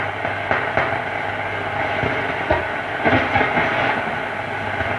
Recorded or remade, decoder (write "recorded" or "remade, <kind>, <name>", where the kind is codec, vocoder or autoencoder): recorded